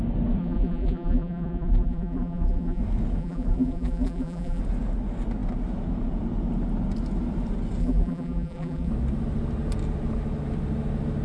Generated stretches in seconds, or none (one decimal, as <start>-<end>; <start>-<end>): 0.4-2.8; 3.2-4.6; 7.8-8.9